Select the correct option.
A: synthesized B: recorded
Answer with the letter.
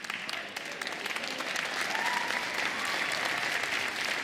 B